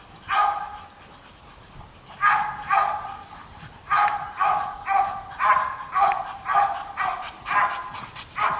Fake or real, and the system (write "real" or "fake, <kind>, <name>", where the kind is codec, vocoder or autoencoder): real